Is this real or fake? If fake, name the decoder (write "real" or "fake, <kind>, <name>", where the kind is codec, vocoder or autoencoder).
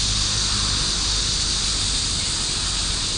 real